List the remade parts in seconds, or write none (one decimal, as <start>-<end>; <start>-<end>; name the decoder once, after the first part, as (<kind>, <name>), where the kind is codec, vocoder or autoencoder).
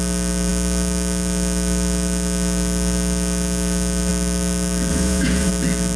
4.9-5.5 (vocoder, Vocos)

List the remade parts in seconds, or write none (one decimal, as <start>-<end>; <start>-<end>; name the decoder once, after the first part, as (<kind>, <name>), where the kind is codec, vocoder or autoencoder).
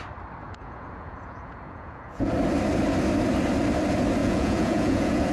0.4-2.3 (vocoder, Vocos); 4.2-5.3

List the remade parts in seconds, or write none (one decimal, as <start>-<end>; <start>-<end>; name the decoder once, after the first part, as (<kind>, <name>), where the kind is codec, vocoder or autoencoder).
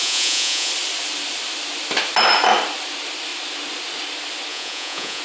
0.0-0.7 (vocoder, Vocos); 4.5-5.2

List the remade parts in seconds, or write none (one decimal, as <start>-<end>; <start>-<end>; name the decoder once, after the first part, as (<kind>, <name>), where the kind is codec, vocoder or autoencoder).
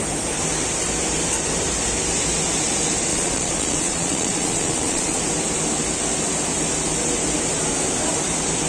3.1-5.2 (vocoder, Vocos)